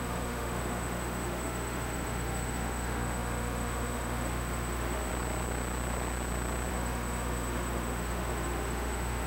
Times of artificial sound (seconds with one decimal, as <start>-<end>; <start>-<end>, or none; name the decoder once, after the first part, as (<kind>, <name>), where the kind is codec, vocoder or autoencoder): 0.0-5.1 (autoencoder, DAC-VAE); 6.7-9.3